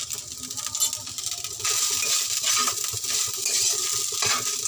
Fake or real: real